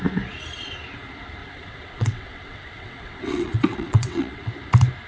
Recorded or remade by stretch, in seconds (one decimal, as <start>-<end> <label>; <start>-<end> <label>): 0.0-1.4 recorded; 1.4-4.5 remade; 4.5-5.1 recorded